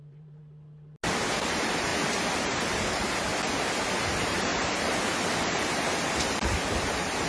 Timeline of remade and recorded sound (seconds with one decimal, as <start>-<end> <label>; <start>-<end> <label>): 0.0-0.4 remade; 0.4-1.1 recorded; 1.1-1.9 remade; 1.9-2.6 recorded; 2.6-3.3 remade; 3.3-4.0 recorded; 4.0-4.5 remade; 4.5-5.5 recorded; 5.5-7.3 remade